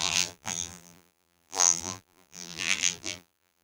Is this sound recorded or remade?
remade